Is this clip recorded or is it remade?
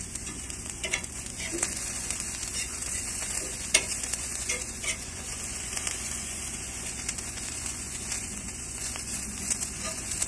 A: remade